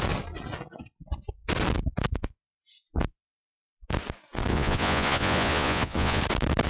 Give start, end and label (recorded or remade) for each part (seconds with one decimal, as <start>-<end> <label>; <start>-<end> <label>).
0.0-4.5 recorded; 4.5-6.2 remade; 6.2-6.7 recorded